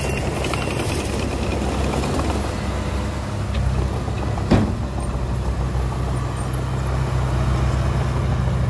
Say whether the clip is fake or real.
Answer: real